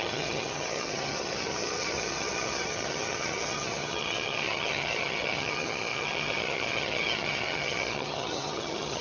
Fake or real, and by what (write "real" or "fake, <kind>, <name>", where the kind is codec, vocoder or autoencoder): fake, vocoder, HiFi-GAN